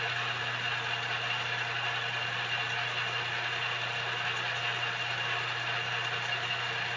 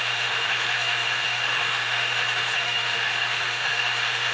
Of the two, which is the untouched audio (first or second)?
first